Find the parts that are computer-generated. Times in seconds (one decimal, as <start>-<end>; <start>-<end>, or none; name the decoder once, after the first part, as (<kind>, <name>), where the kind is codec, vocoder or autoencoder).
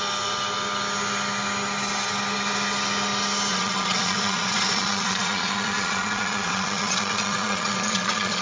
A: 3.5-8.4 (vocoder, Vocos)